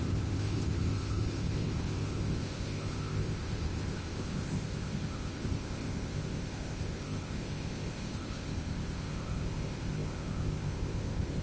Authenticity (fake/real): fake